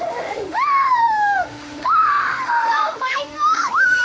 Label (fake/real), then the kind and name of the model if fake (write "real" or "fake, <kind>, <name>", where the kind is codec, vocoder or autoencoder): fake, autoencoder, DAC-VAE